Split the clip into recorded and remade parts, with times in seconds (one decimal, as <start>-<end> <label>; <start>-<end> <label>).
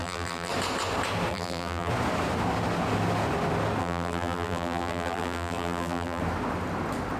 0.0-0.5 remade; 0.5-1.3 recorded; 1.3-1.9 remade; 1.9-3.8 recorded; 3.8-6.2 remade; 6.2-7.2 recorded